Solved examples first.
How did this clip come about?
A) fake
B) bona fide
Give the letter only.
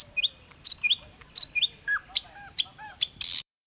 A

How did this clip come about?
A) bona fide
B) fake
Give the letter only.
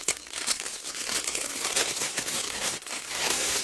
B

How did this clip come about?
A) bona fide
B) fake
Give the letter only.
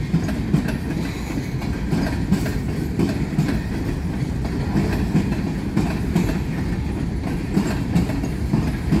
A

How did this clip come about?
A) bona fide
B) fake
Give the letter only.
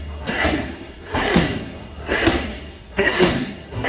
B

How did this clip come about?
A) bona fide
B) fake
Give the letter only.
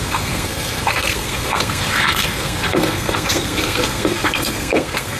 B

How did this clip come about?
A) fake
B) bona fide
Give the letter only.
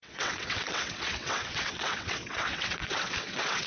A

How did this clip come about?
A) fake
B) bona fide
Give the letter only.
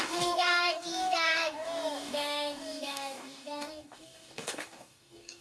A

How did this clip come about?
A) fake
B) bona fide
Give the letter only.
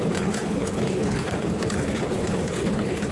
A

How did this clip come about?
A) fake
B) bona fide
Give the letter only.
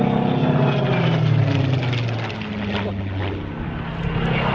B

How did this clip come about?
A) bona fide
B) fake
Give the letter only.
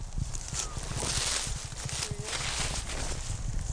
A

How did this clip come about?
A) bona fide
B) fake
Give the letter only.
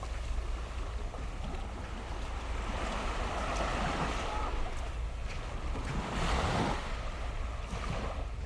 A